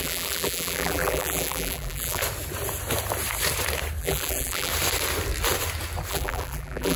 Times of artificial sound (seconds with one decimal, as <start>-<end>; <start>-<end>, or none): 0.0-2.2; 4.0-4.7; 6.1-7.0